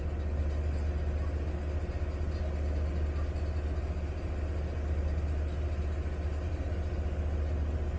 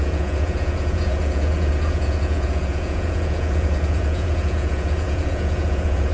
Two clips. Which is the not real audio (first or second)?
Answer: second